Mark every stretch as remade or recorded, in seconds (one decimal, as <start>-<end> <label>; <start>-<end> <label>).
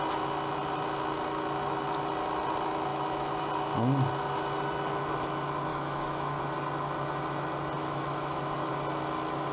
0.0-2.9 recorded; 2.9-3.5 remade; 3.5-5.7 recorded; 5.7-6.4 remade; 6.4-7.8 recorded; 7.8-8.7 remade; 8.7-9.5 recorded